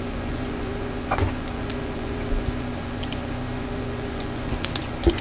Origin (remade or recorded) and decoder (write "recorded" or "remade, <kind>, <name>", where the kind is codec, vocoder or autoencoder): remade, vocoder, Vocos